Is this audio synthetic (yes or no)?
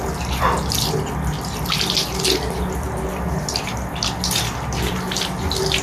no